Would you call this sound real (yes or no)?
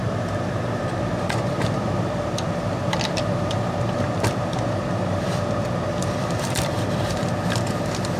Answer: no